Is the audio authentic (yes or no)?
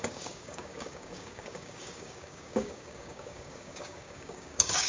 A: no